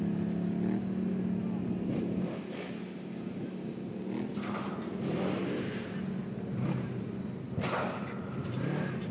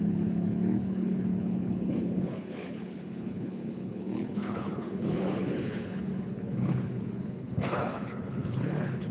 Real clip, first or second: first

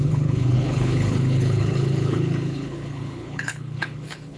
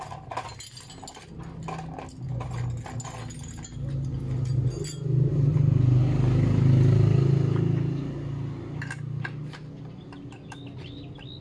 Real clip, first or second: second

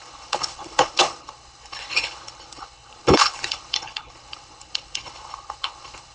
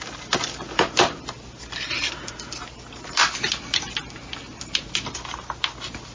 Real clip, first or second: second